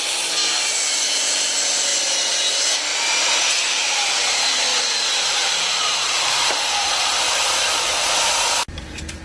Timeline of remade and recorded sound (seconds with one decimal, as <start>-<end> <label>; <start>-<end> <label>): 0.0-1.9 remade; 1.9-2.5 recorded; 2.5-9.2 remade